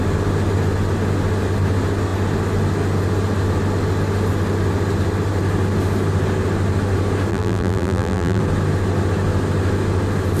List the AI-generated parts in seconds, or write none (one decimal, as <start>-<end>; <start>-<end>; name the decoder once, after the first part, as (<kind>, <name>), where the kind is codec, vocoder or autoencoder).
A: 7.3-8.4 (vocoder, BigVGAN v2)